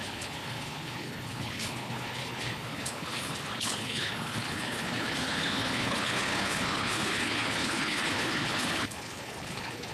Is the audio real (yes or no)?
no